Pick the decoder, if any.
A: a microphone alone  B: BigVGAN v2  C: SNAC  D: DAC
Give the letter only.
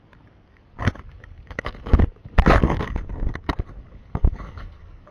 D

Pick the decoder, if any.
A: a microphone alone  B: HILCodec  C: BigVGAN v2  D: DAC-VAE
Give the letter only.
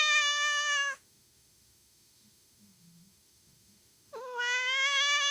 D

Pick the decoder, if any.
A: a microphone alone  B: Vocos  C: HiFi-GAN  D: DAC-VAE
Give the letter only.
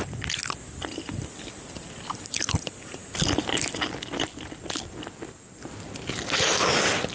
A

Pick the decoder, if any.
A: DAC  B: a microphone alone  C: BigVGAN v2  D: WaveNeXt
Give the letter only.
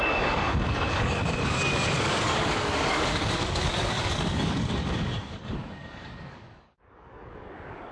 A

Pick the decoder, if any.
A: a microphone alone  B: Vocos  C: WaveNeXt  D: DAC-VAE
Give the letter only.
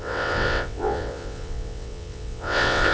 C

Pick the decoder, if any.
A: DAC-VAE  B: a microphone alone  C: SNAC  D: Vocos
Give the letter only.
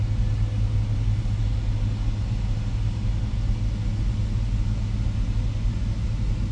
B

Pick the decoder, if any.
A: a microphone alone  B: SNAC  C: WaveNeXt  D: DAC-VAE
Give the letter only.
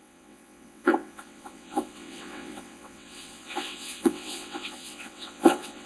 C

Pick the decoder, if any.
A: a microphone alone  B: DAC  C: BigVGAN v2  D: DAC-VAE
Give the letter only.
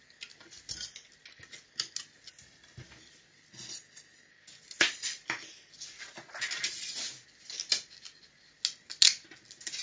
A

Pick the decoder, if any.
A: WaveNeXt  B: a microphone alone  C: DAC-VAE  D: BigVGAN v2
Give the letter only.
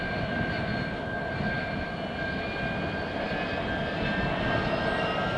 B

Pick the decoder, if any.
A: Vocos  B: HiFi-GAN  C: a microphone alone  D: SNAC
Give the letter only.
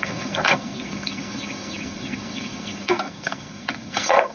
D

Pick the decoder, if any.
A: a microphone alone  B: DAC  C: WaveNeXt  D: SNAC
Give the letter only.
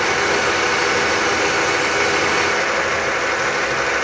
A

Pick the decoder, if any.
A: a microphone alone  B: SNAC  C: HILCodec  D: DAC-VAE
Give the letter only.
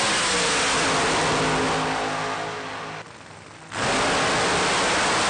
A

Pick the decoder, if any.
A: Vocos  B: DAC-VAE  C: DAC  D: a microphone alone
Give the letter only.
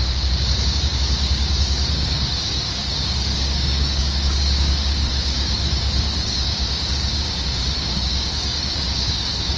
C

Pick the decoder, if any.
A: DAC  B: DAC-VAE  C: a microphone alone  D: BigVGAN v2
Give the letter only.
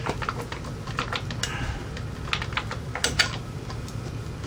C